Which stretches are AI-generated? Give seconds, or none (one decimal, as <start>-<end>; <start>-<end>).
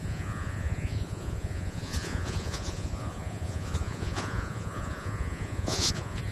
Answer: 0.0-6.3